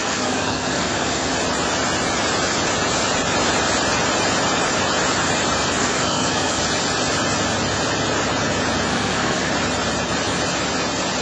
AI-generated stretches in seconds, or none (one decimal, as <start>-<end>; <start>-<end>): 0.0-1.3; 5.8-6.6; 8.9-9.5